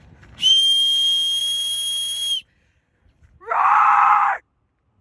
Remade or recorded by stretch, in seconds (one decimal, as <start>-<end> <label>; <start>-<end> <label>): 0.0-1.4 recorded; 1.4-4.4 remade; 4.4-5.0 recorded